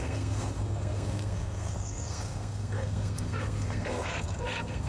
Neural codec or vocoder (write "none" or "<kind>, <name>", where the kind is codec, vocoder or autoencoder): codec, SNAC